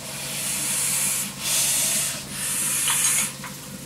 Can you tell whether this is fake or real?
real